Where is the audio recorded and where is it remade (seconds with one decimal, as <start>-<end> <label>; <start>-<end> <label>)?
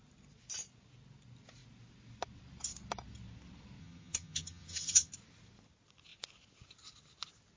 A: 0.0-3.8 recorded; 3.8-5.1 remade; 5.1-7.6 recorded